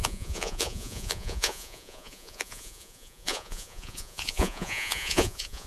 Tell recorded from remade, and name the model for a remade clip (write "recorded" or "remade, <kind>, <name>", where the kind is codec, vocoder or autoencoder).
remade, vocoder, Vocos